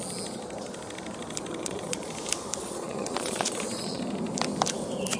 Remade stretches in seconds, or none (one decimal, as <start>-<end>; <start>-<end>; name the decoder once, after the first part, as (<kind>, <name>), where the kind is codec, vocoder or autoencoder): 1.6-2.1 (vocoder, Vocos); 2.6-4.0